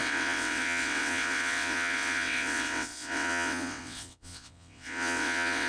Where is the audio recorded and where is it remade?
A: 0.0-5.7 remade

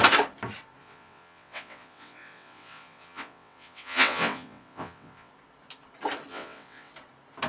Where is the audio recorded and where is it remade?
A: 0.0-0.8 recorded; 0.8-5.3 remade; 5.3-6.3 recorded; 6.3-6.9 remade; 6.9-7.5 recorded

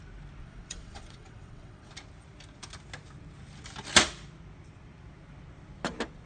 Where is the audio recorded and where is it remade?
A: 0.0-0.4 recorded; 0.4-1.9 remade; 1.9-6.3 recorded

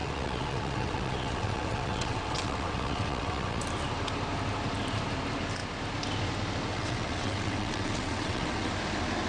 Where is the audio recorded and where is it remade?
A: 0.0-3.6 remade; 3.6-6.7 recorded; 6.7-8.7 remade; 8.7-9.3 recorded

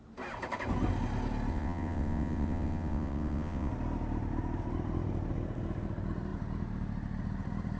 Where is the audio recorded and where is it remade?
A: 0.0-1.5 recorded; 1.5-3.7 remade; 3.7-7.8 recorded

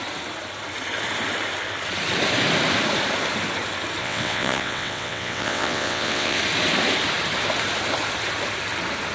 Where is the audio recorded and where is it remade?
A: 0.0-4.0 recorded; 4.0-6.4 remade; 6.4-9.1 recorded

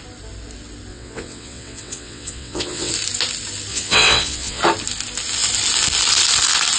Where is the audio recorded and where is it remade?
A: 0.0-0.9 recorded; 0.9-2.9 remade; 2.9-3.7 recorded; 3.7-4.6 remade; 4.6-6.8 recorded